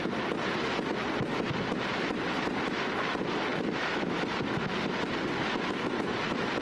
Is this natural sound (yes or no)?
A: yes